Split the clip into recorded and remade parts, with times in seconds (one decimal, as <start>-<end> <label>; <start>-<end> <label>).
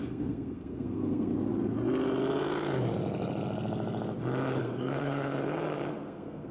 0.0-1.3 remade; 1.3-4.6 recorded; 4.6-5.3 remade; 5.3-5.9 recorded; 5.9-6.5 remade